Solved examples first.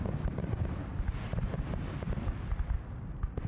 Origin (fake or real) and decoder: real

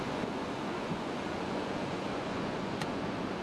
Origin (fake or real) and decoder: fake, vocoder, Vocos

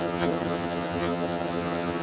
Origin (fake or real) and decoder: fake, vocoder, HiFi-GAN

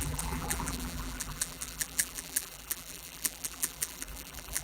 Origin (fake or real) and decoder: fake, vocoder, BigVGAN v2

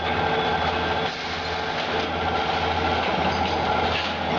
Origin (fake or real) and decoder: real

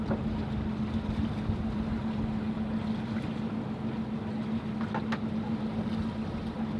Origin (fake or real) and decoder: real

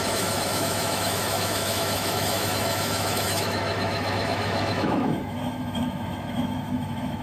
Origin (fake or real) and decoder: fake, autoencoder, DAC-VAE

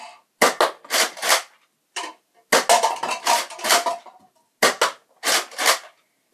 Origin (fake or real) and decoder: real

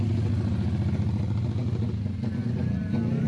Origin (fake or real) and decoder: real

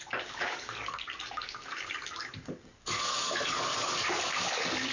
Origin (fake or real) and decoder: fake, codec, DAC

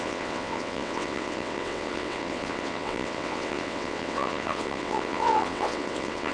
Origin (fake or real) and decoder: fake, vocoder, WaveNeXt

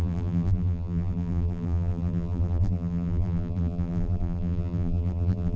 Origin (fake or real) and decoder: fake, vocoder, BigVGAN v2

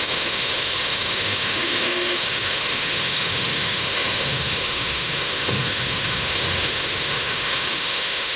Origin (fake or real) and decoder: fake, autoencoder, DAC-VAE